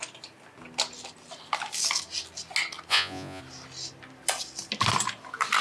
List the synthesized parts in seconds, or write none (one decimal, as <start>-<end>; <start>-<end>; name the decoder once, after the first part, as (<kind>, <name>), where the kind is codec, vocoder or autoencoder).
2.9-3.4 (vocoder, Vocos)